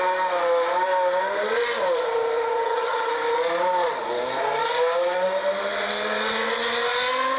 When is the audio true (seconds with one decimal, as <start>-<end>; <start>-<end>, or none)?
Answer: 0.0-2.5; 3.1-7.4